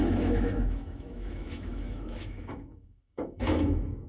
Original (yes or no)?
no